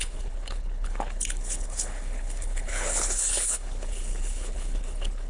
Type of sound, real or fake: fake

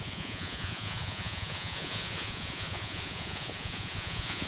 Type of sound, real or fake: fake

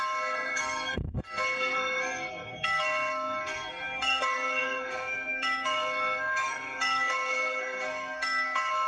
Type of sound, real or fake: fake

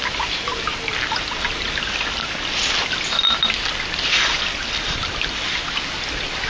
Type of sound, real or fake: real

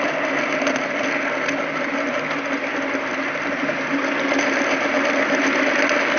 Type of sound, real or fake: real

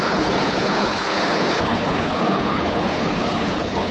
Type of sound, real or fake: fake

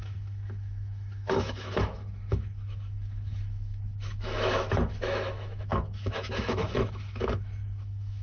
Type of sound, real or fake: fake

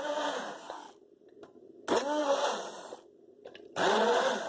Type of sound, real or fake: real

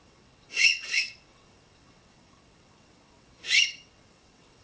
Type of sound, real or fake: fake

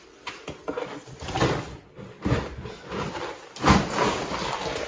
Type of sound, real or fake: real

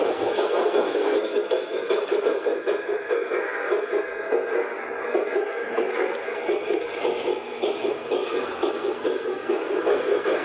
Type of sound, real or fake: fake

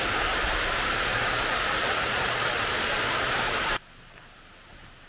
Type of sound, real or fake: real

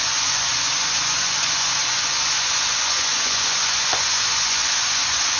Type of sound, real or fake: fake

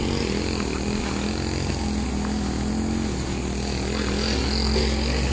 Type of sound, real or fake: real